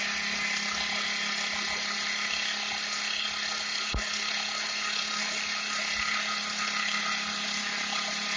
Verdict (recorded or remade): recorded